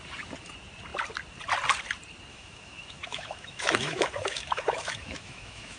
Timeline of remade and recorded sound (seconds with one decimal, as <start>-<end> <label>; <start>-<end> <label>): 0.0-2.3 recorded; 2.3-5.8 remade